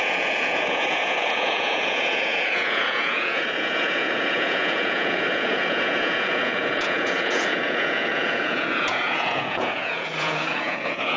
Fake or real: fake